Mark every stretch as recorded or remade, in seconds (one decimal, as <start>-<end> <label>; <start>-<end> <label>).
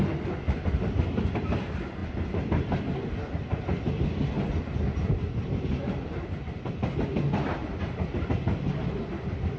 0.0-9.6 recorded